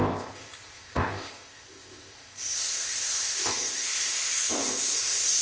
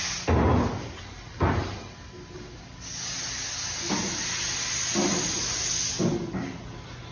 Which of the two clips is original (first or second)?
second